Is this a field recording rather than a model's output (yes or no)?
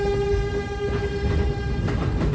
yes